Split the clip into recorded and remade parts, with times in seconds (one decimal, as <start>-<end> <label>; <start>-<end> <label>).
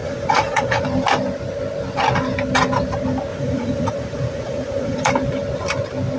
0.0-0.8 remade; 0.8-3.3 recorded; 3.3-5.1 remade; 5.1-6.2 recorded